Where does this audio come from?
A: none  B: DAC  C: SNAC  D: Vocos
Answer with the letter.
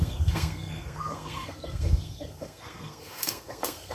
C